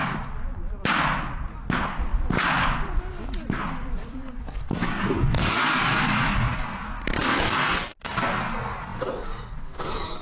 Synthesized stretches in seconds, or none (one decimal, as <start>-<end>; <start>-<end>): 4.8-7.0; 8.9-10.2